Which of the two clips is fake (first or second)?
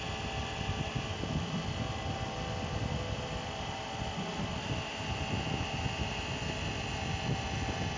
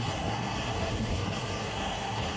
second